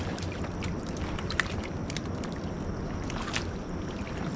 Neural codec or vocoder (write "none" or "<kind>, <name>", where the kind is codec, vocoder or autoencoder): none